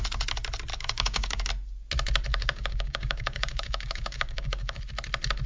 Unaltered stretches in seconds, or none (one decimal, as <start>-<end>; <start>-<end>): 0.0-0.7; 1.5-2.3; 4.8-5.5